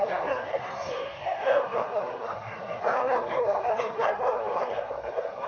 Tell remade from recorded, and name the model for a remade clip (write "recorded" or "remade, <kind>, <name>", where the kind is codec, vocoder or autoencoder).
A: remade, codec, SNAC